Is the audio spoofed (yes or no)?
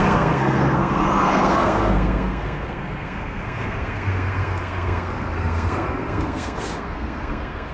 yes